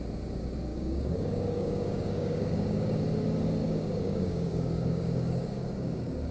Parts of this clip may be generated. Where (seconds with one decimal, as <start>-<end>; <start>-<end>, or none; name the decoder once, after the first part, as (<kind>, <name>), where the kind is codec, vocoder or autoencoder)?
0.7-3.0 (codec, DAC); 3.6-6.3